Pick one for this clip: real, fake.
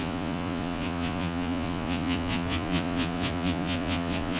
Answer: fake